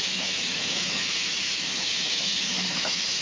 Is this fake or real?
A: fake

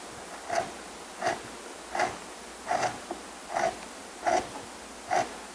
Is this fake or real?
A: real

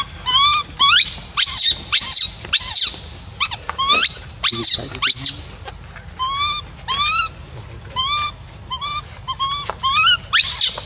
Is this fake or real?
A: real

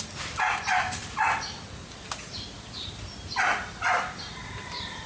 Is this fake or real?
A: real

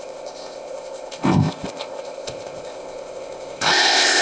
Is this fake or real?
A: fake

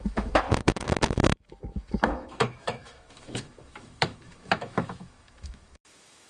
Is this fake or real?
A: fake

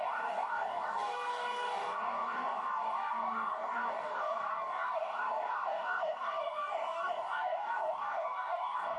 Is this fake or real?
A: fake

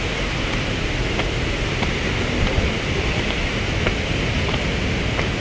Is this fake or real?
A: real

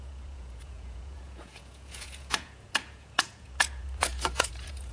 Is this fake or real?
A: fake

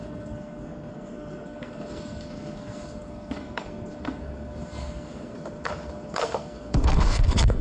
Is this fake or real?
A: fake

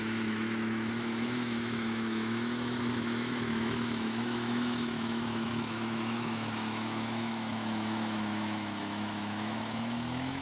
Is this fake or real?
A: fake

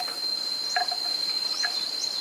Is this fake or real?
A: real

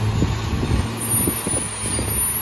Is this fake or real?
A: real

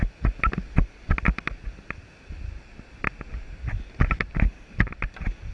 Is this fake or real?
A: real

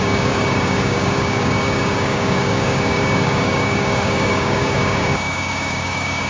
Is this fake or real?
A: fake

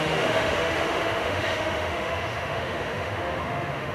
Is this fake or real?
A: fake